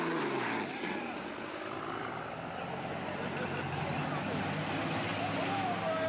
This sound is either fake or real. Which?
real